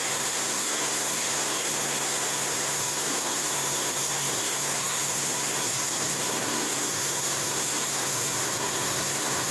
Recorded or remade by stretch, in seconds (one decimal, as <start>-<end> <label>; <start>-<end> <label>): 0.0-9.5 remade